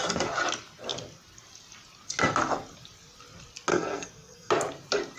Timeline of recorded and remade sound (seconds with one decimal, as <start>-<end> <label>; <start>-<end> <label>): 0.0-3.7 recorded; 3.7-4.5 remade; 4.5-5.2 recorded